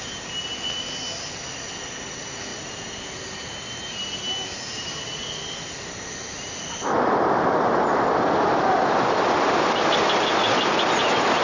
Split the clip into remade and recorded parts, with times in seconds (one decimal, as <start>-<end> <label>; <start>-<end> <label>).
0.0-11.4 recorded